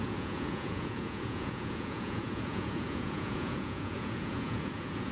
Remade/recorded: remade